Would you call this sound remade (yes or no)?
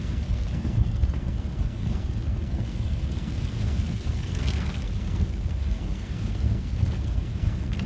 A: yes